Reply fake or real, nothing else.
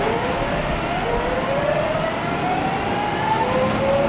real